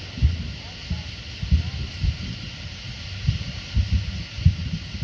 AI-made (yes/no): no